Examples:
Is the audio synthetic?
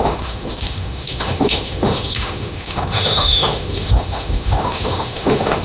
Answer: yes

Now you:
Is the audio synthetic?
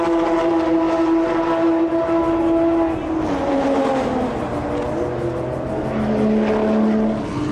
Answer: no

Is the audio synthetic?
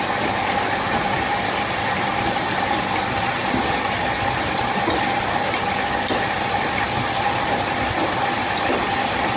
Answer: yes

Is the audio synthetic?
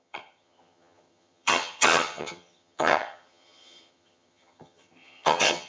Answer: yes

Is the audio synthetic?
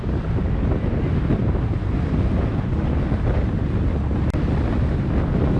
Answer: no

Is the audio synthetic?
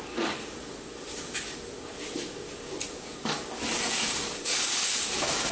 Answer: yes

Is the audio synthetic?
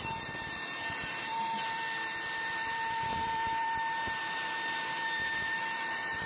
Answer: yes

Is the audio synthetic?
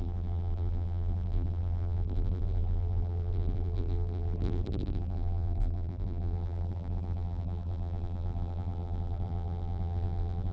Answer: yes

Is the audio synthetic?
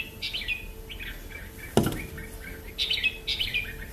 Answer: no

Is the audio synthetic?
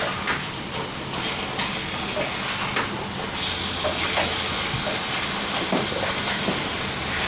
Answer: no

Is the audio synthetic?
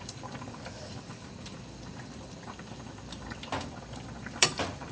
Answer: yes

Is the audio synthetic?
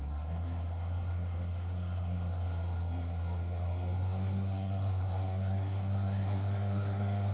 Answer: yes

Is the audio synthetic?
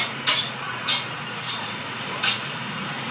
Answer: yes